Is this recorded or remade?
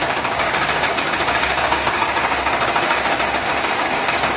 remade